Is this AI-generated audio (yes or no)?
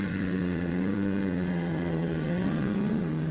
yes